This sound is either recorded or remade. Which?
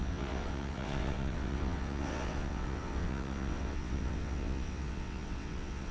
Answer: remade